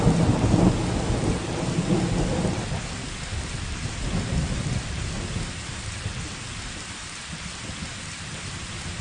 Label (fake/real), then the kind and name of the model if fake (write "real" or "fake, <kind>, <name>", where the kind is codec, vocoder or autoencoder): real